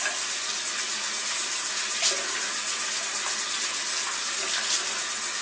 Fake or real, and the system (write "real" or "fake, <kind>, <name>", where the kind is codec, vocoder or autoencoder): real